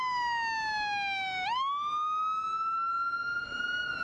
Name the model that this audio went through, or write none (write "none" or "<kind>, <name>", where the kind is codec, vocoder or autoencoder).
none